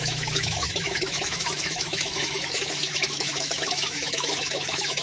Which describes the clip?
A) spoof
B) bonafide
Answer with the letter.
A